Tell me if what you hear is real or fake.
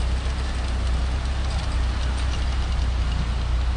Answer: real